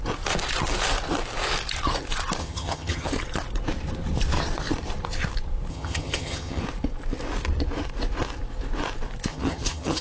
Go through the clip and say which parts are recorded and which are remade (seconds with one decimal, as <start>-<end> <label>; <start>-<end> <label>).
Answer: 0.0-2.4 recorded; 2.4-3.1 remade; 3.1-5.7 recorded; 5.7-6.6 remade; 6.6-9.3 recorded; 9.3-10.0 remade